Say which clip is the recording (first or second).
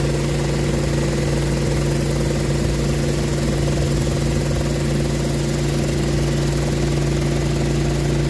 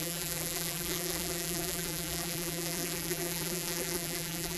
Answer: first